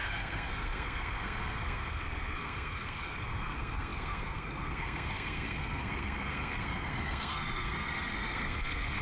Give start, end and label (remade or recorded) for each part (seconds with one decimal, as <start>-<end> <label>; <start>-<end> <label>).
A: 0.0-9.0 remade